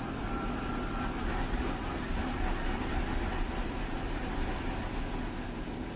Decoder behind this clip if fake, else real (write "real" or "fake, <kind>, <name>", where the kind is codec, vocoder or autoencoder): real